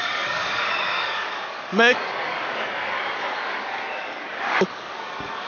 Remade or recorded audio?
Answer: remade